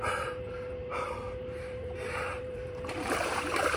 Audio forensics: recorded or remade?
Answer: remade